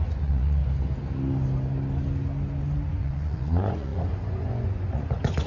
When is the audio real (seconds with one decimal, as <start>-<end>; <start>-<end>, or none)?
0.6-3.0